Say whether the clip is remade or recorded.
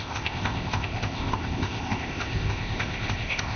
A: remade